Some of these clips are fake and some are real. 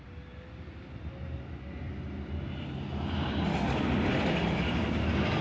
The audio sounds real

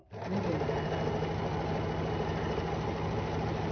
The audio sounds real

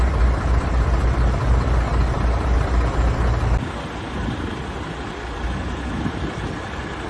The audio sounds real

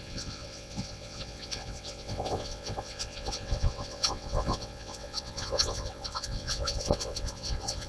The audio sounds fake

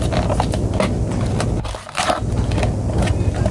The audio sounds real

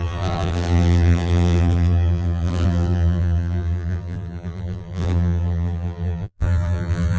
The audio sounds fake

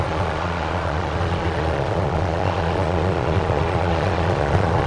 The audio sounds fake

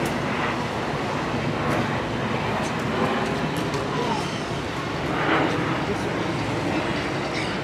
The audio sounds real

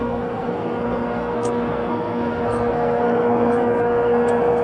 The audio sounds fake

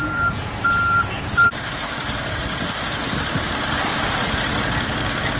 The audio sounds fake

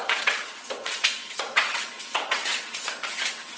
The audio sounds fake